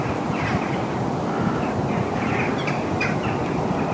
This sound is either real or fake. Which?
real